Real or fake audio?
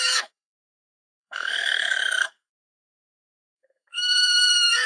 fake